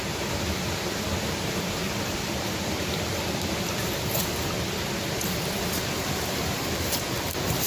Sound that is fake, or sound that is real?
fake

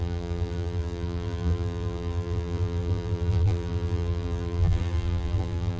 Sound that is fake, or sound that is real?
fake